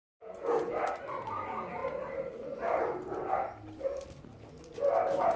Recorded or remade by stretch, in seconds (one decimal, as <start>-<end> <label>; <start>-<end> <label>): 0.0-0.7 remade; 0.7-5.4 recorded